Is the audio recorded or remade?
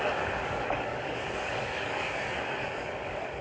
remade